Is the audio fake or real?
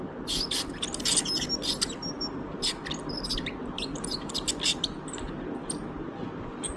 real